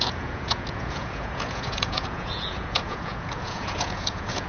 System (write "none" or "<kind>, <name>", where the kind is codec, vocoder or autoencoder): vocoder, Vocos